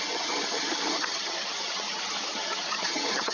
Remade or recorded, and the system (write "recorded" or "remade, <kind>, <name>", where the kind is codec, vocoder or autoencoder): remade, vocoder, HiFi-GAN